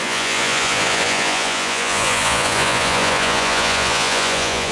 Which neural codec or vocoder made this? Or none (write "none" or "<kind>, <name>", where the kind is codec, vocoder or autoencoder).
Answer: vocoder, Vocos